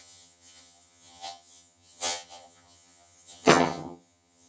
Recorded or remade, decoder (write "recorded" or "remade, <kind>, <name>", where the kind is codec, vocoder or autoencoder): remade, vocoder, HiFi-GAN